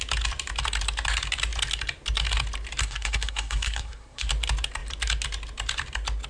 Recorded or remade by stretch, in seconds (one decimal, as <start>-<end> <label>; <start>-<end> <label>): 0.0-2.8 recorded; 2.8-4.3 remade; 4.3-6.3 recorded